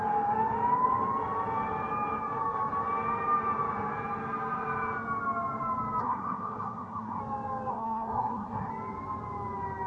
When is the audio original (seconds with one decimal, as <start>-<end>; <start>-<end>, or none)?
0.0-6.0; 7.2-7.7; 8.7-9.9